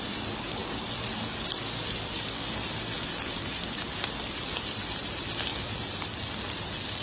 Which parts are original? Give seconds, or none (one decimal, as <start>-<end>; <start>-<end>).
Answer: 0.0-7.0